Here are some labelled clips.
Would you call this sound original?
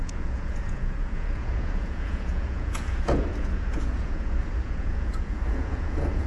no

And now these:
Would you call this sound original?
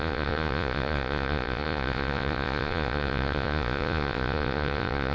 no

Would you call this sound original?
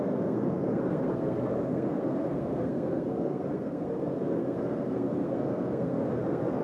no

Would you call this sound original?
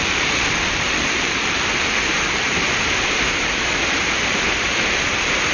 no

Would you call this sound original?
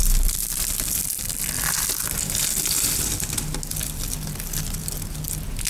yes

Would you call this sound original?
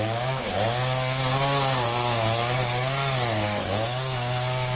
no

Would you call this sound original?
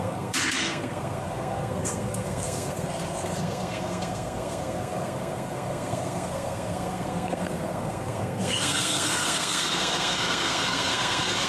no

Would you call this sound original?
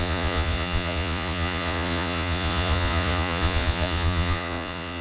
no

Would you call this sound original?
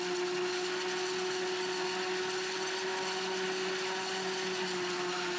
yes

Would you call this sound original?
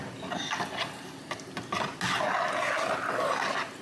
yes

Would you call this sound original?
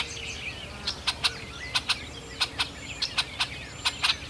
yes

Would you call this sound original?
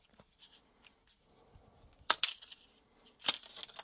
yes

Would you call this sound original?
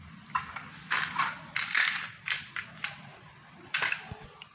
yes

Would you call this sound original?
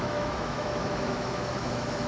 no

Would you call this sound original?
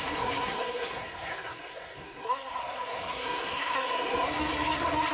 no